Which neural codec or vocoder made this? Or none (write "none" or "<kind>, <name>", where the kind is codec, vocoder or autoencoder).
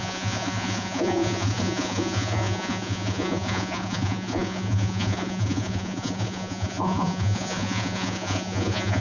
vocoder, Vocos